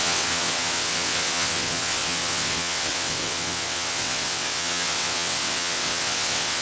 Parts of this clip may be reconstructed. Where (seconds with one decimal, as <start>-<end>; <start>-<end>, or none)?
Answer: 0.0-6.6